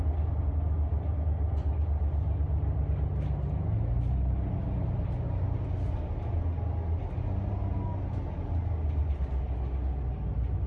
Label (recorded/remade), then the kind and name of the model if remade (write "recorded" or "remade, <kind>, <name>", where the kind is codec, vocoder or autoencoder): recorded